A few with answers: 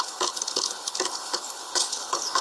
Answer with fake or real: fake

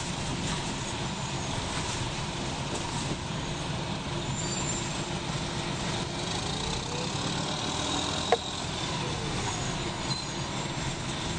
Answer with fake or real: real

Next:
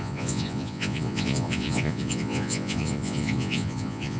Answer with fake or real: fake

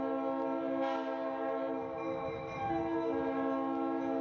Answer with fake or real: real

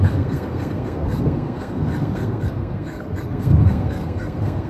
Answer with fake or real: fake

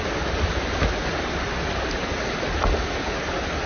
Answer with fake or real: real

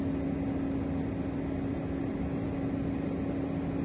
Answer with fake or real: real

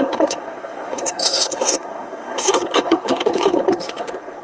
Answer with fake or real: fake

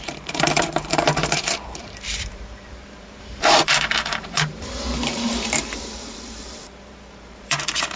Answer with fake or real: fake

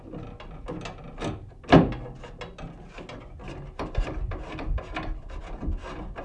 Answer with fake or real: real